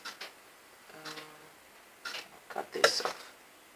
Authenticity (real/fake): real